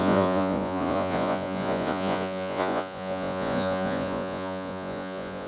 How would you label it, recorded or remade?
remade